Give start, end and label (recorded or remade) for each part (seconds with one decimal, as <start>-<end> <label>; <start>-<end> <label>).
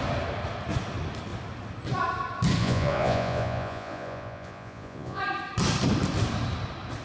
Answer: 0.0-2.6 recorded; 2.6-5.2 remade; 5.2-7.0 recorded